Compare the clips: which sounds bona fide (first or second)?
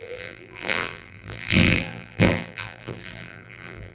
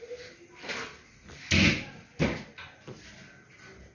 second